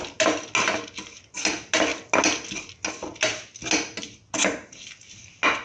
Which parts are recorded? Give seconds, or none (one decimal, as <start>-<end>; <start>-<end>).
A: 0.0-5.6